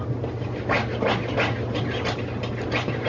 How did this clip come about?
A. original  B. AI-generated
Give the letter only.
A